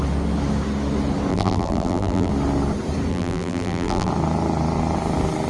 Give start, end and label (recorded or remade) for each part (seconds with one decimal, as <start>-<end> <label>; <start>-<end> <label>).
0.0-1.3 recorded; 1.3-2.3 remade; 2.3-3.1 recorded; 3.1-4.1 remade; 4.1-5.5 recorded